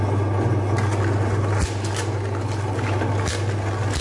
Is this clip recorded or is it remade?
recorded